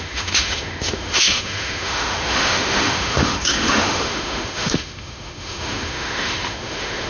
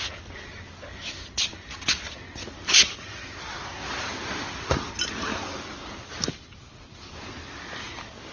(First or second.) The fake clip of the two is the first